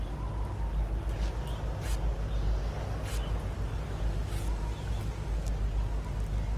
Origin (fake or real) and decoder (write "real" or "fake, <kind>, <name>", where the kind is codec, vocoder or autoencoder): real